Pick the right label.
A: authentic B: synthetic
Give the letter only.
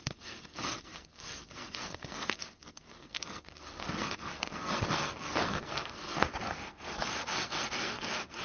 B